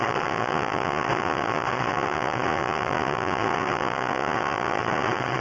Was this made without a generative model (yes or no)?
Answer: no